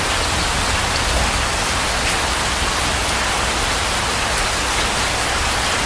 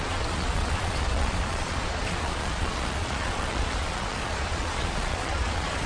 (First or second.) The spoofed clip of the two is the second